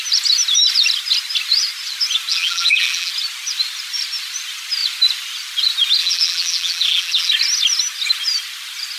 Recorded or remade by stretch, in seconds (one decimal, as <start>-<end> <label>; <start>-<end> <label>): 0.0-2.3 recorded; 2.3-3.1 remade; 3.1-6.0 recorded; 6.0-7.3 remade; 7.3-9.0 recorded

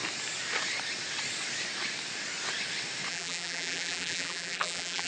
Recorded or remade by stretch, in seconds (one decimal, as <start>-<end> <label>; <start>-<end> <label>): 0.0-3.1 recorded; 3.1-5.1 remade

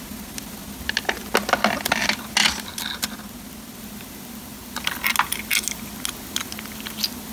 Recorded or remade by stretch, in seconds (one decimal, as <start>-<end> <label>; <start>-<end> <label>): 0.0-7.3 recorded